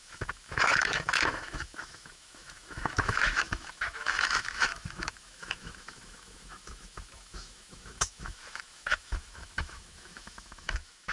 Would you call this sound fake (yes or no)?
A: yes